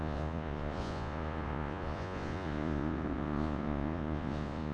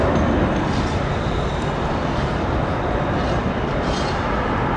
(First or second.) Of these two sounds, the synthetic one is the first